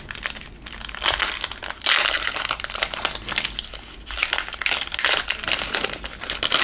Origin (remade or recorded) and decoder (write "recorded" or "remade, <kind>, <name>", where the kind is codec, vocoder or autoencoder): recorded